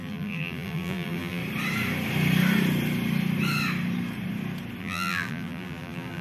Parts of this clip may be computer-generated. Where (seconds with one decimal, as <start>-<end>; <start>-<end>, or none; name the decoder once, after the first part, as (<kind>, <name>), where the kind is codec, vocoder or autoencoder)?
0.0-1.4 (vocoder, BigVGAN v2); 4.8-6.2